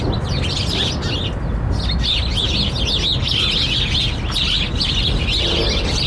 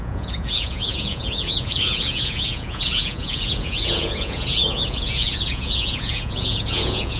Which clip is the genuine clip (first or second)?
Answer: first